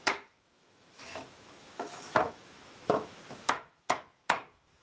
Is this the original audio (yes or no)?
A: no